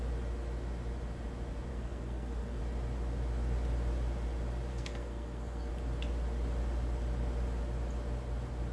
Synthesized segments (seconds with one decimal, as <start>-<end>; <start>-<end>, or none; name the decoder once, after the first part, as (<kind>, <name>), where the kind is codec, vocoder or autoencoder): 1.7-2.6 (codec, SNAC); 4.7-5.7